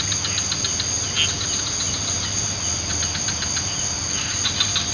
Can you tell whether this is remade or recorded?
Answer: recorded